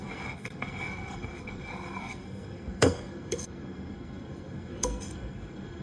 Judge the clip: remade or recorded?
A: remade